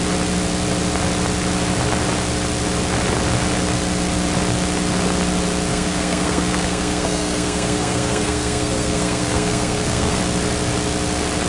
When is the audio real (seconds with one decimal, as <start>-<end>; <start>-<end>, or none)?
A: 0.0-5.7; 10.2-11.5